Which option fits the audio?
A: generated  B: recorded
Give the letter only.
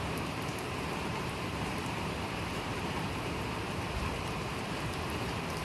A